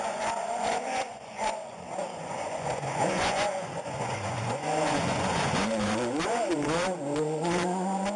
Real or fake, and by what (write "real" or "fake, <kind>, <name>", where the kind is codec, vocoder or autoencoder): fake, vocoder, Vocos